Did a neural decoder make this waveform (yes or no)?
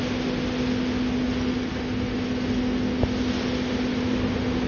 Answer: no